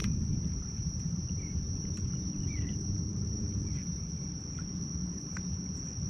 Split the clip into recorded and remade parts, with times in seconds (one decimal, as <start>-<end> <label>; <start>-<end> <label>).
0.0-3.7 remade; 3.7-5.0 recorded; 5.0-5.5 remade; 5.5-6.1 recorded